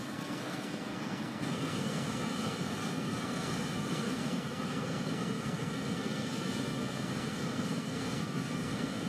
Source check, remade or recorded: remade